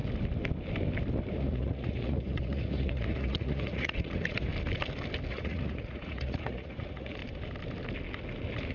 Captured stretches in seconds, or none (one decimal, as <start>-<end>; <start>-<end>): 0.0-1.3; 4.5-5.3; 7.2-8.7